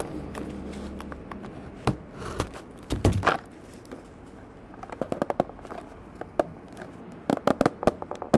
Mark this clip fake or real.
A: real